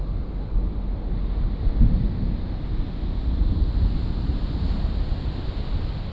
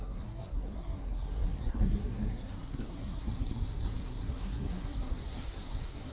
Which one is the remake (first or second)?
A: second